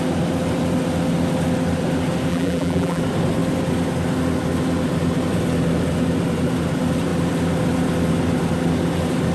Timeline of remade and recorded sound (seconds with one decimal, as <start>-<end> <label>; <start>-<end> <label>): 0.0-2.3 recorded; 2.3-3.0 remade; 3.0-9.3 recorded